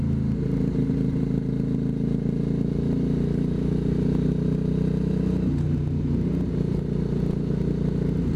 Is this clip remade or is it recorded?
recorded